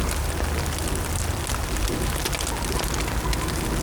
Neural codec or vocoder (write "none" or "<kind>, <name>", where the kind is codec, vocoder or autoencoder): none